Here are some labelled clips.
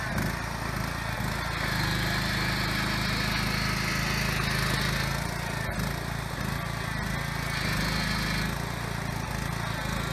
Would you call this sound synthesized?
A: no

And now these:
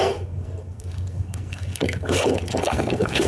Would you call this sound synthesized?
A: yes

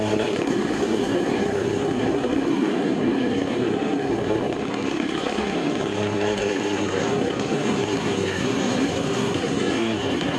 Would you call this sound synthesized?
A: yes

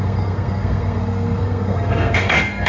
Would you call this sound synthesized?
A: yes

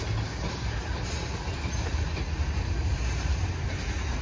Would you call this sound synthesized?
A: no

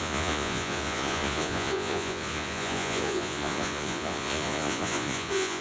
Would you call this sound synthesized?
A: yes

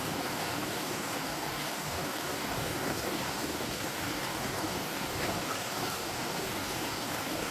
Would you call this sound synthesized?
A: yes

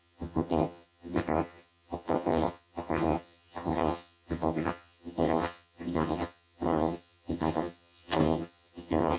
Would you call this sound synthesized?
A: yes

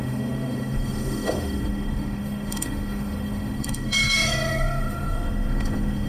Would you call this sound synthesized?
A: yes